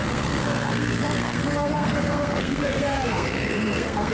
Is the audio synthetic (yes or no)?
yes